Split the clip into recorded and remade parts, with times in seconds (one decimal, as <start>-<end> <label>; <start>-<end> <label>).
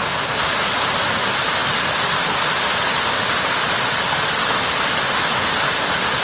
0.0-6.2 recorded